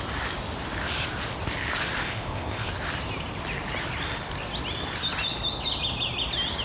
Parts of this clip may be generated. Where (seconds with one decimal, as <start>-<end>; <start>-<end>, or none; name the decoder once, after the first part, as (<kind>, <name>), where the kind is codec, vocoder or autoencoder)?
2.0-2.7 (codec, ZipCodec)